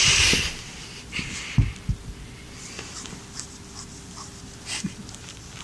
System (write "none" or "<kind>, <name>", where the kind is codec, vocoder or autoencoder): none